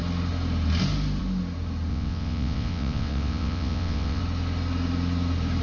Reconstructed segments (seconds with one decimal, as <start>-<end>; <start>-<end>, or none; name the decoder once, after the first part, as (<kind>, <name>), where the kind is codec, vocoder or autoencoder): 1.9-4.2 (vocoder, WaveNeXt)